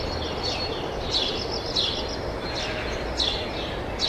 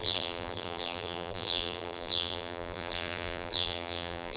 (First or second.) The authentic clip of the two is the first